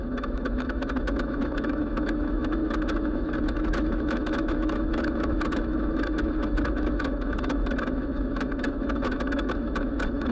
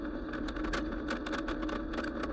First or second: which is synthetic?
first